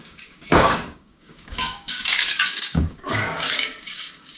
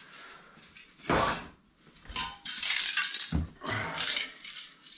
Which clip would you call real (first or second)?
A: second